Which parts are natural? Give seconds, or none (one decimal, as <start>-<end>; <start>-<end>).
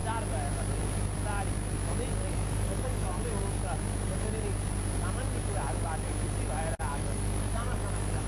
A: 0.0-2.2; 3.2-6.9